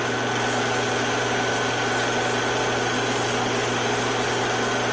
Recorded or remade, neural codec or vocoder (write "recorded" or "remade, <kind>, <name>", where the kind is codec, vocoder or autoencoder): recorded